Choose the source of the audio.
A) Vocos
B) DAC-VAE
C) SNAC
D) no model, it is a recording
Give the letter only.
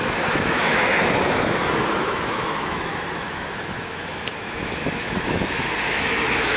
B